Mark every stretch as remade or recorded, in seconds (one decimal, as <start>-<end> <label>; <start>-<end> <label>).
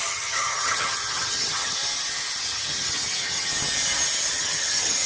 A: 0.0-1.8 remade; 1.8-2.4 recorded; 2.4-3.5 remade; 3.5-4.3 recorded; 4.3-5.1 remade